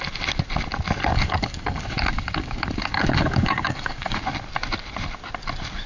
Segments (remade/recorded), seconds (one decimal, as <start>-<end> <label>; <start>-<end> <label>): 0.0-1.1 recorded; 1.1-4.2 remade; 4.2-5.9 recorded